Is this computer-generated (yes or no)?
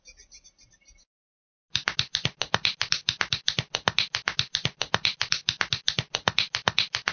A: no